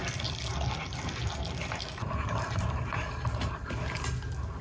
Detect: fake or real real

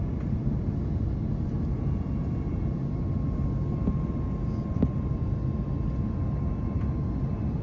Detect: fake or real real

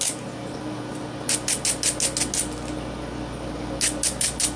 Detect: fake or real real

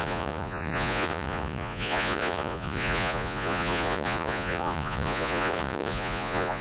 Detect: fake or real fake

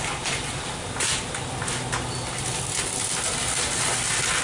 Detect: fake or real real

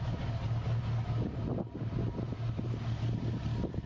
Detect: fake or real real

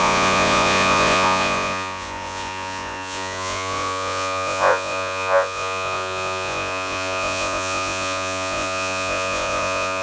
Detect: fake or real fake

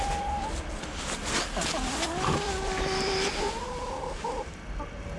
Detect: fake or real real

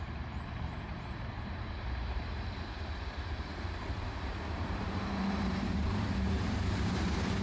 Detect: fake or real fake